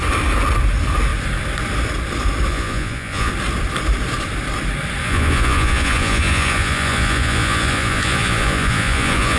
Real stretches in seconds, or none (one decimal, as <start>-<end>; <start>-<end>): 0.0-2.5; 3.3-5.0